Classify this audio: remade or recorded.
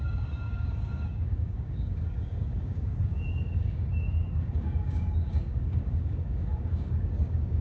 remade